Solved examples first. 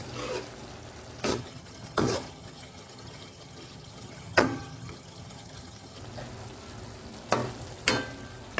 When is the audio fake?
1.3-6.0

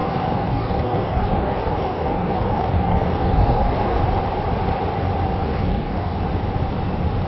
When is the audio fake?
0.0-4.0; 5.4-6.2